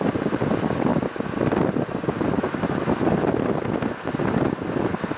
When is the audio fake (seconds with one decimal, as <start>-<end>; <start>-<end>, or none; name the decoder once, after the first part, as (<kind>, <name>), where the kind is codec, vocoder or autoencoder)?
none